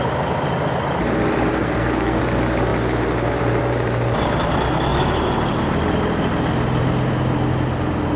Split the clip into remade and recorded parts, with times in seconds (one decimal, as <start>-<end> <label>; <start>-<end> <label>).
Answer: 0.0-1.5 recorded; 1.5-2.2 remade; 2.2-8.2 recorded